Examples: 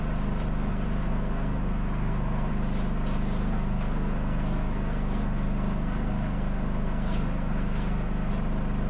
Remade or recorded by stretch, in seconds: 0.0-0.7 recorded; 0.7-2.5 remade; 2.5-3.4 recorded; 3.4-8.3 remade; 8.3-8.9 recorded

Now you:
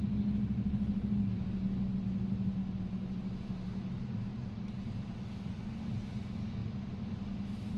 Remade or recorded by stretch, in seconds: 0.0-4.3 recorded; 4.3-5.0 remade; 5.0-7.8 recorded

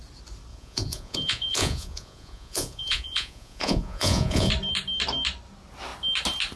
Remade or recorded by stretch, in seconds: 0.0-0.5 recorded; 0.5-4.5 remade; 4.5-6.6 recorded